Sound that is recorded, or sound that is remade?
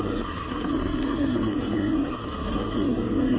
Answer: remade